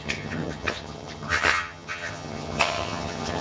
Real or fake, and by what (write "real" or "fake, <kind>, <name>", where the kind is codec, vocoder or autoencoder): fake, vocoder, HiFi-GAN